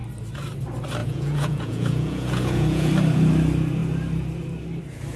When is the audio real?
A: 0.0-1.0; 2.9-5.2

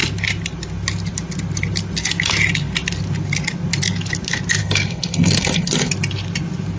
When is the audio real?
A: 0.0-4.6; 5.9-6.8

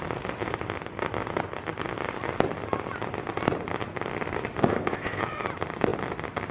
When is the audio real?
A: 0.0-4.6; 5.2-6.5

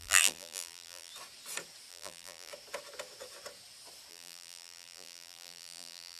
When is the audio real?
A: 1.1-1.9; 2.5-4.1

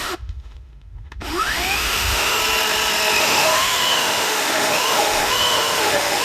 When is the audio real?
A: 2.4-3.2